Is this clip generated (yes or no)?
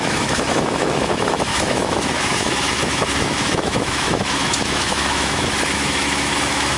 yes